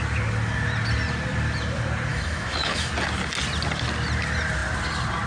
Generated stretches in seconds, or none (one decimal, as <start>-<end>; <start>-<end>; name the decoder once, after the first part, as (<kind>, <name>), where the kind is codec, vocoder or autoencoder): 2.1-2.9 (autoencoder, DAC-VAE)

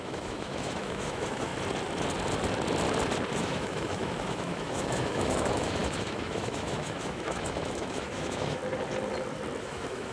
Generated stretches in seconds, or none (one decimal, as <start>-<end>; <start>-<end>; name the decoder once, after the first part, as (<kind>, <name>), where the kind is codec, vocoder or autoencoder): 0.0-1.5 (autoencoder, DAC-VAE); 3.3-8.6; 9.6-10.1

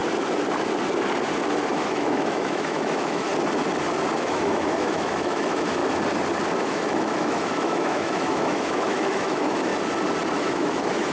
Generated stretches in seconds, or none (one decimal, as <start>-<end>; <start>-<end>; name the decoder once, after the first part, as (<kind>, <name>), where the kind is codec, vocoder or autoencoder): 1.7-3.3 (autoencoder, DAC-VAE); 4.2-5.8; 6.6-9.7; 10.4-11.1